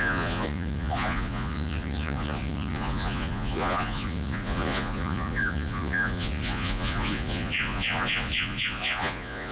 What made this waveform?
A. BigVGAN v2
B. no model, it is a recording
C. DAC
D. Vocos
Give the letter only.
D